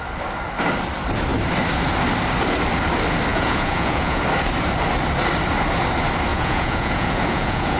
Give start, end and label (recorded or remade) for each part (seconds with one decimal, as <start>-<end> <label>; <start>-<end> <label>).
0.0-3.3 recorded; 3.3-4.2 remade; 4.2-6.3 recorded; 6.3-7.8 remade